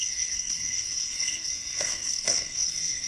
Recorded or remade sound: remade